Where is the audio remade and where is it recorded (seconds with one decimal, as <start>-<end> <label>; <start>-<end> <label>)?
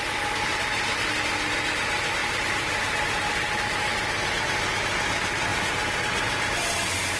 0.0-7.2 recorded